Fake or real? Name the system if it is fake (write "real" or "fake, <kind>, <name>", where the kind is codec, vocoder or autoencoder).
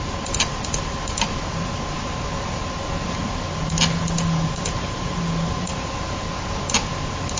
real